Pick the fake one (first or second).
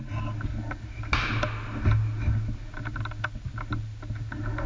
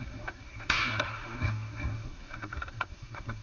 second